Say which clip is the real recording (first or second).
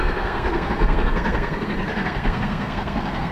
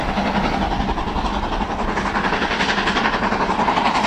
second